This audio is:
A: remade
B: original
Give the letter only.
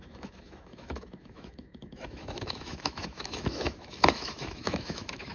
A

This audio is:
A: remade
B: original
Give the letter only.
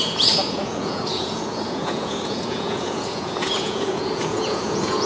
A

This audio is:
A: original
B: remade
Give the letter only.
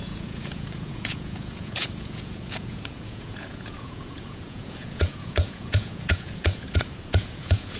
B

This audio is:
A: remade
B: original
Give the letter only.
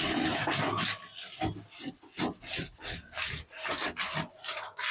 B